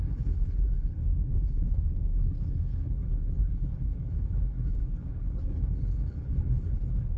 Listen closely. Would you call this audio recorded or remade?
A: remade